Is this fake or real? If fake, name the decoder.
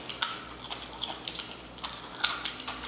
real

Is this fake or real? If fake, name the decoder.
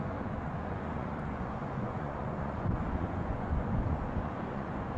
fake, vocoder, Vocos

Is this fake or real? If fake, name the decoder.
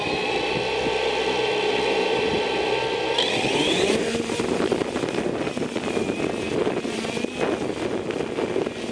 real